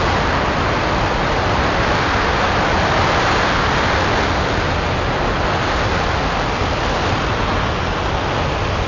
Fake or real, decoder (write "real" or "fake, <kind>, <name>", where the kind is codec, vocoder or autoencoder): real